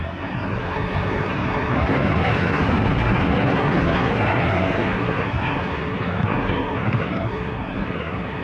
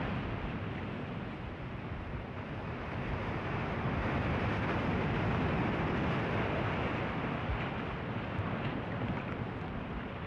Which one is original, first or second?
second